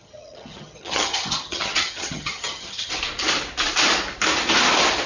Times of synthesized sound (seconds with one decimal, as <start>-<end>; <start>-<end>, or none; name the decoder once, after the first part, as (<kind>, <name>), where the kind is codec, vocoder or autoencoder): 0.0-2.9 (vocoder, HiFi-GAN)